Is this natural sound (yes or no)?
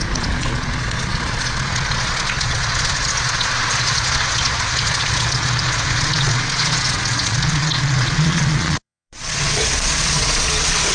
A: no